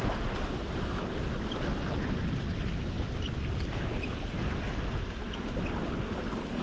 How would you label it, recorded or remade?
recorded